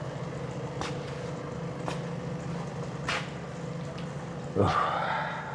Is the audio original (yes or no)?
yes